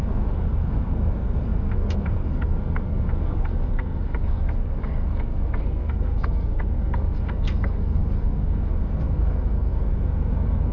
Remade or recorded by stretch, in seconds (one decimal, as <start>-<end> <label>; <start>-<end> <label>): 0.0-10.7 remade

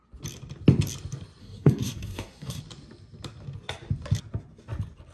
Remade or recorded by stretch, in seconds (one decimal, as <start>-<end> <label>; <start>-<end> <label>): 0.0-1.4 recorded; 1.4-2.6 remade; 2.6-5.1 recorded